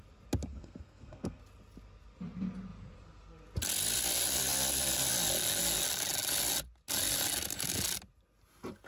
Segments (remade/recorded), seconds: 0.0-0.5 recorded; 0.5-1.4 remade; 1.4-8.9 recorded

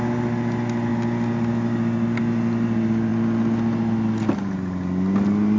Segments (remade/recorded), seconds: 0.0-5.6 recorded

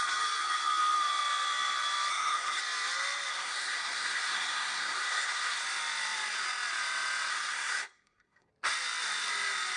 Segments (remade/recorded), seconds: 0.0-2.1 recorded; 2.1-2.6 remade; 2.6-3.3 recorded; 3.3-5.6 remade; 5.6-7.3 recorded; 7.3-8.5 remade; 8.5-9.8 recorded

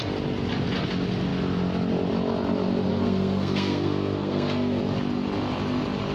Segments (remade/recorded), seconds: 0.0-2.9 recorded; 2.9-4.8 remade; 4.8-6.1 recorded

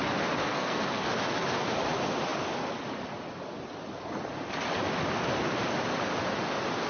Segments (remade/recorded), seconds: 0.0-0.4 recorded; 0.4-1.1 remade; 1.1-6.9 recorded